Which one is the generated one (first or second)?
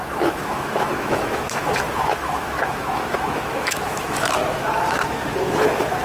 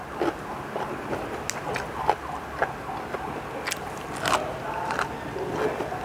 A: first